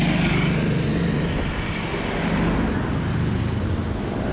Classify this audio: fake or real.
real